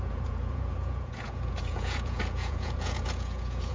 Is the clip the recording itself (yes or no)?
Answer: no